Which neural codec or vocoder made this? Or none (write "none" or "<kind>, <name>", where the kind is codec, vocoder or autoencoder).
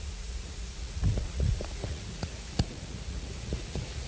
vocoder, Vocos